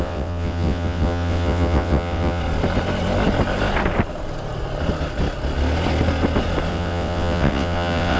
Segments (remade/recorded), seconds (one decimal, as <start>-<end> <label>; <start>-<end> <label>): 0.0-2.4 remade; 2.4-6.7 recorded; 6.7-8.2 remade